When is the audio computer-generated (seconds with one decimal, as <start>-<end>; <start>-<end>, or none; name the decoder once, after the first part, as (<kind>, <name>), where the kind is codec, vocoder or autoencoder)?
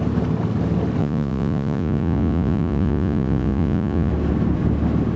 1.0-4.1 (vocoder, Vocos)